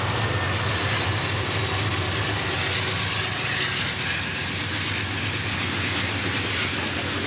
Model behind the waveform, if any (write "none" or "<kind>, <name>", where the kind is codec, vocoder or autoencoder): none